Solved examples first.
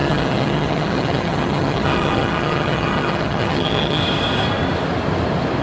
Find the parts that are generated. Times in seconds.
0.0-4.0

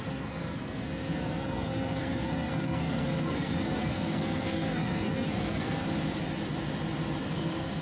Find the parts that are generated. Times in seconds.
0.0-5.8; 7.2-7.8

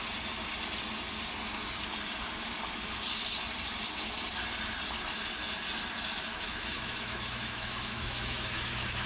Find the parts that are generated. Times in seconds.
6.3-9.1

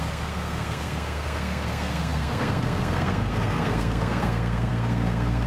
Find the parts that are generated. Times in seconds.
0.0-5.5

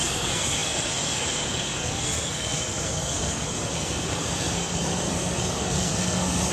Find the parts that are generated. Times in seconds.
0.0-6.5

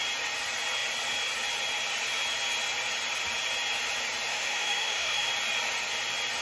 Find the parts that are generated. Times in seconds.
4.3-5.3